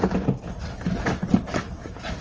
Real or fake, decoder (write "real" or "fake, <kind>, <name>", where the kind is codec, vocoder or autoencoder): real